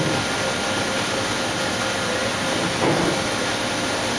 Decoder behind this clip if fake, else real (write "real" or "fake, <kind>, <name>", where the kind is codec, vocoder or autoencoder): real